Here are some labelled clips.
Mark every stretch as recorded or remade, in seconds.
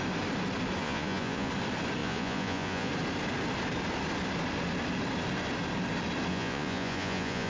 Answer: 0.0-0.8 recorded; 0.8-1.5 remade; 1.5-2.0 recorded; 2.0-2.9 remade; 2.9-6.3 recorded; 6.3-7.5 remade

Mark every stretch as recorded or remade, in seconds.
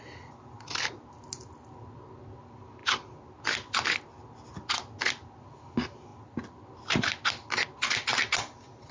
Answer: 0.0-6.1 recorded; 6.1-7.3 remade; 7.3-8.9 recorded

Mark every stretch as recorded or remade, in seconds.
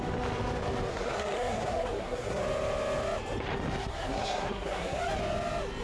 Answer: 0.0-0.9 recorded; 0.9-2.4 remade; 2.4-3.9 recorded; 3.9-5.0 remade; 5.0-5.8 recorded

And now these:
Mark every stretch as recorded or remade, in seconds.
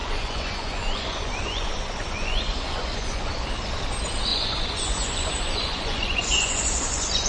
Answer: 0.0-3.3 remade; 3.3-4.3 recorded; 4.3-7.3 remade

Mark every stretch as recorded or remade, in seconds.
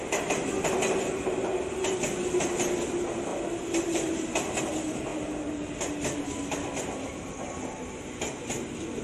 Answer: 0.0-3.3 recorded; 3.3-4.6 remade; 4.6-9.0 recorded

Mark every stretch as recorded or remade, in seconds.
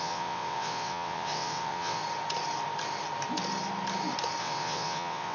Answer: 0.0-2.0 remade; 2.0-4.4 recorded; 4.4-5.3 remade